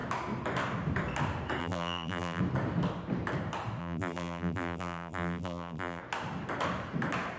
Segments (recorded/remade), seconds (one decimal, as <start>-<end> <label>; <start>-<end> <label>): 0.0-1.6 recorded; 1.6-2.4 remade; 2.4-3.8 recorded; 3.8-6.0 remade; 6.0-7.4 recorded